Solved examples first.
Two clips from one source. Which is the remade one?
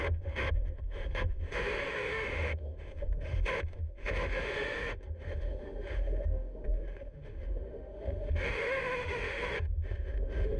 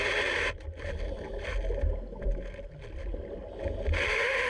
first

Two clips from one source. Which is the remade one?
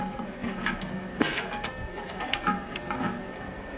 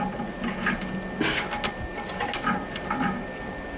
first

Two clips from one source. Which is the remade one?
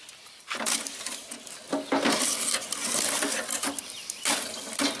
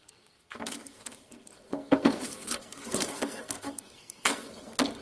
second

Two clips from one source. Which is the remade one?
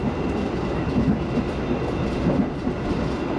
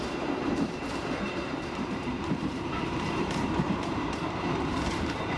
second